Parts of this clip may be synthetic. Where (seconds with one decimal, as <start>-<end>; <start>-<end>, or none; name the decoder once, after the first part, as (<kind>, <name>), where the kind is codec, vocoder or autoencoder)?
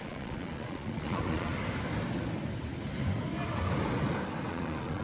0.0-1.5 (vocoder, Vocos); 4.5-5.0